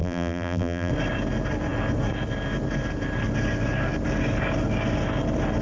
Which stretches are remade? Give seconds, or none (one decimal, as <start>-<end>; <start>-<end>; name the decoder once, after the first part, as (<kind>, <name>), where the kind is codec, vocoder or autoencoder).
0.0-0.9 (vocoder, BigVGAN v2)